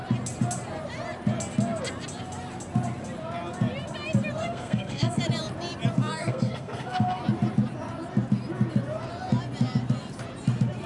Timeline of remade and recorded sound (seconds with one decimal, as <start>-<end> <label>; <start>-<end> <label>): 0.0-4.4 recorded; 4.4-5.2 remade; 5.2-6.0 recorded; 6.0-7.2 remade; 7.2-10.9 recorded